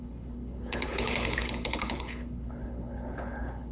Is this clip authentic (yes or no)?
no